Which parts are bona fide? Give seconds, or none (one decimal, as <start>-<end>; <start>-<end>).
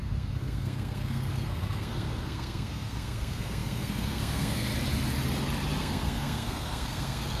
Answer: 4.7-5.8